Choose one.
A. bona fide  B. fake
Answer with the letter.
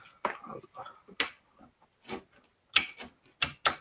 A